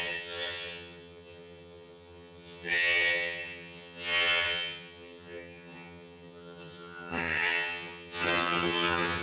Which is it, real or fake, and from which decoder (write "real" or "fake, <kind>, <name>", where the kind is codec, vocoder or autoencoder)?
fake, vocoder, HiFi-GAN